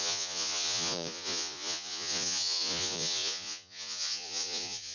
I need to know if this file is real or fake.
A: fake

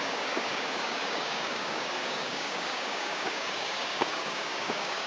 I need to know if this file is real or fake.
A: fake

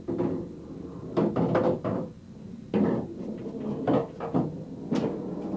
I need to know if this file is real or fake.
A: real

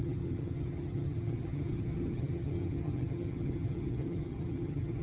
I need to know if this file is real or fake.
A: fake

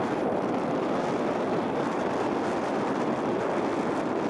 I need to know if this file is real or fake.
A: real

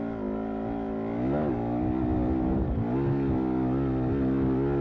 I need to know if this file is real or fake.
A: real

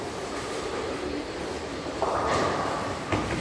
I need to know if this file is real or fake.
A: fake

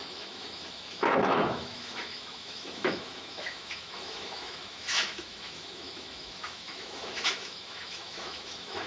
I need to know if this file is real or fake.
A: fake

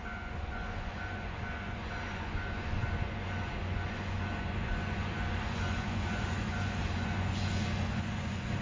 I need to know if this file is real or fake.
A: fake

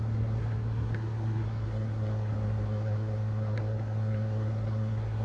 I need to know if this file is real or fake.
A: fake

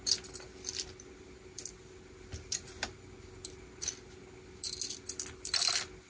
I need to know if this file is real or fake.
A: real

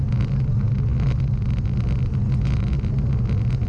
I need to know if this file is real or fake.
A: real